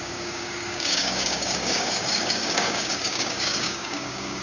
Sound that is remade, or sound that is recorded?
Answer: remade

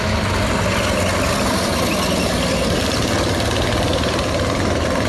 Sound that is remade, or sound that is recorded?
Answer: recorded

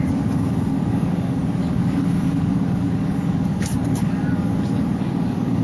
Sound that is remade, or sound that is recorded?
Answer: remade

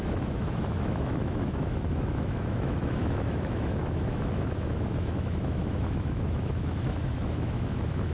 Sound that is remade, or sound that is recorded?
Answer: remade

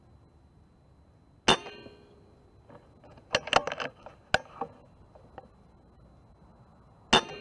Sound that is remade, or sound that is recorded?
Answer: recorded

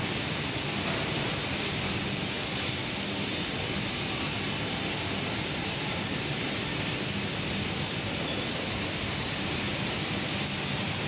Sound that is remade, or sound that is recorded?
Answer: recorded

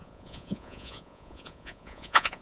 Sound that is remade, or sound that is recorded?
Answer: remade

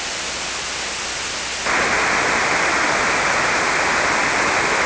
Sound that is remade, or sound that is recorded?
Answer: recorded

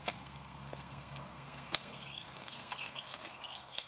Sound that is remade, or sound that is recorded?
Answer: remade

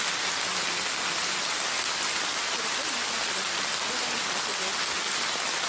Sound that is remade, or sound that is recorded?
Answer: recorded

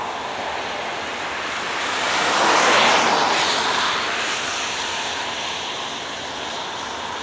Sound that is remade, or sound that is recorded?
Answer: recorded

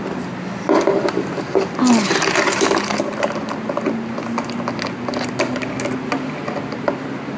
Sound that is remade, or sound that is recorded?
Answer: recorded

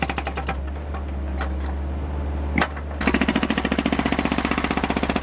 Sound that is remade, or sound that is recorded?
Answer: recorded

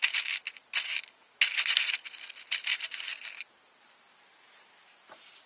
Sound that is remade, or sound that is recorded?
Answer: recorded